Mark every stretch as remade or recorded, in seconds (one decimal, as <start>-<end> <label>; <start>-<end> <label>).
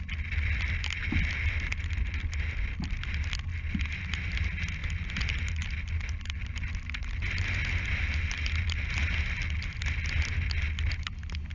0.0-11.5 recorded